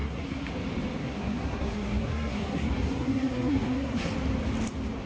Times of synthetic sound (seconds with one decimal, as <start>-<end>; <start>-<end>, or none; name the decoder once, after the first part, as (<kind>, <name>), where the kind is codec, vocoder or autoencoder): 0.0-0.5 (codec, SNAC); 1.0-4.1